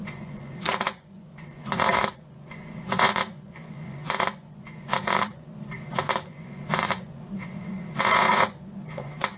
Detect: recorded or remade remade